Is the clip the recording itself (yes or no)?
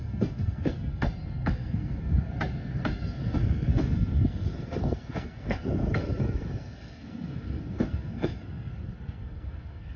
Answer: no